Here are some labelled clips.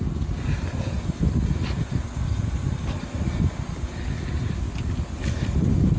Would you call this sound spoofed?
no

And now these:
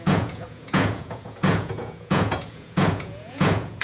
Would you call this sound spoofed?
yes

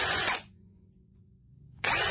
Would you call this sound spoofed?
yes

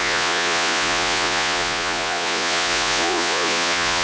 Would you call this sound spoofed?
yes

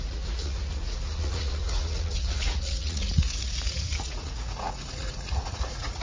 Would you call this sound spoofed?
yes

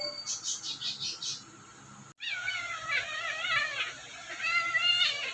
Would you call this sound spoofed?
no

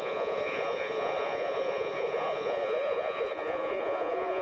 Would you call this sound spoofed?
yes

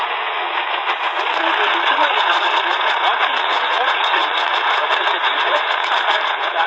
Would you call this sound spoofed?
yes